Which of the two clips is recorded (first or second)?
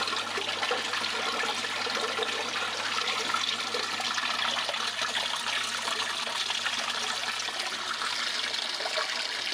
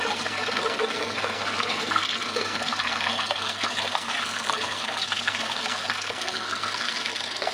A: first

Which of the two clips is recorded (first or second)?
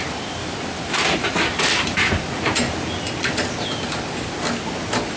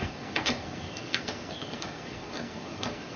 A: first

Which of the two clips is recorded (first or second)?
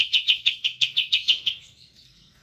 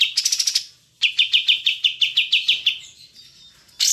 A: second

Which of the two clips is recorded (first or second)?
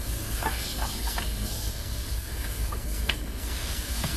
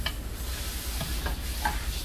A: second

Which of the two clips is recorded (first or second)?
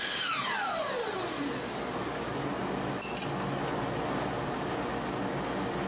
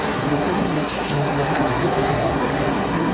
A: first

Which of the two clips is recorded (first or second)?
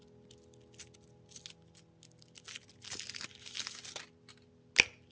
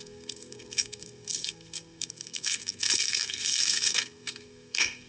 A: first